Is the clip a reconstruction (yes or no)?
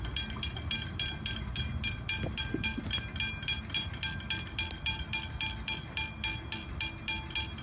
no